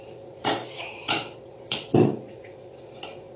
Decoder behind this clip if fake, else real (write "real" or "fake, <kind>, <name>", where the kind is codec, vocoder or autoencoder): fake, vocoder, Vocos